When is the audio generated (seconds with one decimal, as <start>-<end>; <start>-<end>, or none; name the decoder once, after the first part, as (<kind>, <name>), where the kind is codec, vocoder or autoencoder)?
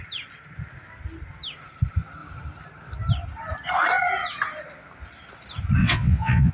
5.8-6.5 (vocoder, WaveNeXt)